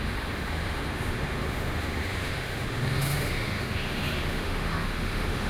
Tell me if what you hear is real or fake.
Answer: fake